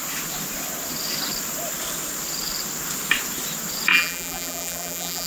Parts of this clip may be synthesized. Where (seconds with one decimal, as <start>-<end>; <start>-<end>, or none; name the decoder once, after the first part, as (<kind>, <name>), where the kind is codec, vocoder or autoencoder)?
3.9-5.3 (vocoder, BigVGAN v2)

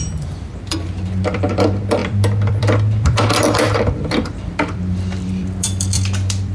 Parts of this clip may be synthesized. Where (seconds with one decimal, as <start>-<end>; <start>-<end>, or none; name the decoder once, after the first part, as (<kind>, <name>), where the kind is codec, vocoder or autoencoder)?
0.0-6.5 (vocoder, BigVGAN v2)

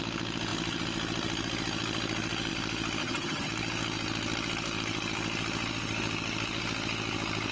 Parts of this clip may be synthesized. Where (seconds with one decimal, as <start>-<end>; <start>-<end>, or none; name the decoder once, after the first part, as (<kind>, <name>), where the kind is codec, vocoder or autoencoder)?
3.0-3.5 (vocoder, HiFi-GAN)

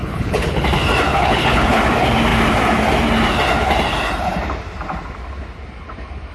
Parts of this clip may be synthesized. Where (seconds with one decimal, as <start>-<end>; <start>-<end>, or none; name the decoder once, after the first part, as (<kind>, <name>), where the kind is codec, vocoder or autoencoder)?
0.0-0.6 (codec, HILCodec); 1.1-1.8